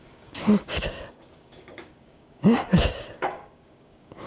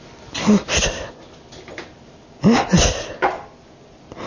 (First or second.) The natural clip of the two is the second